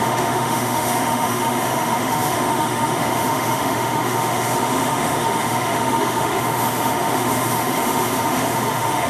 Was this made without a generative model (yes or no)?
no